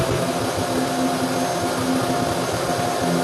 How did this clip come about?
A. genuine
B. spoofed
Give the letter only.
A